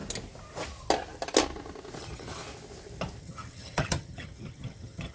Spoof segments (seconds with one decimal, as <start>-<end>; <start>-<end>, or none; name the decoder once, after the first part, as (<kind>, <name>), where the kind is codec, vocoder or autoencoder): 2.0-2.4 (vocoder, HiFi-GAN); 3.2-5.1